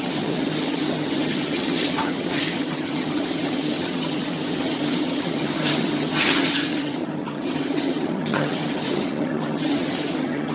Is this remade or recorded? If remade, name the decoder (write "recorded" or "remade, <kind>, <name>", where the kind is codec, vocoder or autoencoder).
remade, vocoder, HiFi-GAN